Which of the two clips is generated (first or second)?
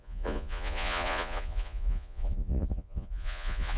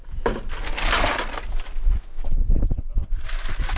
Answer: first